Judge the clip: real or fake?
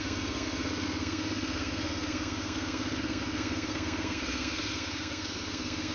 fake